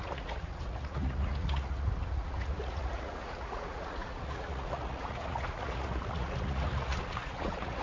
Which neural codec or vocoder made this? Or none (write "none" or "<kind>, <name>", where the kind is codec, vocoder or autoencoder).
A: vocoder, Vocos